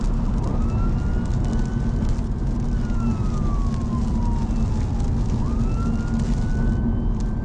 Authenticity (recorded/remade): recorded